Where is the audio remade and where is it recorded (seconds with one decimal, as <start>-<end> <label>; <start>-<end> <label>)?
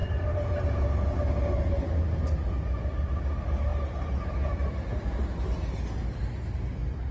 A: 0.0-7.1 recorded